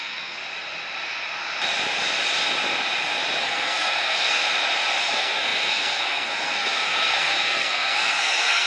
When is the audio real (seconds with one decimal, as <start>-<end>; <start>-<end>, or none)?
0.4-3.4; 4.4-5.0